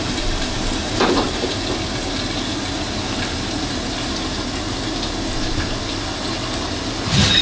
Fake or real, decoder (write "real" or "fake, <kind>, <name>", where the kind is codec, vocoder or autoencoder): real